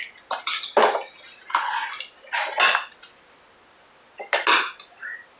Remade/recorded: recorded